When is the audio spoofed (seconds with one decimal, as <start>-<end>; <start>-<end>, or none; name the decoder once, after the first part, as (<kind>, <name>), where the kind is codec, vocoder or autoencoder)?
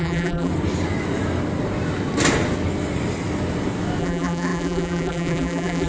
0.0-0.5 (vocoder, BigVGAN v2); 4.0-5.9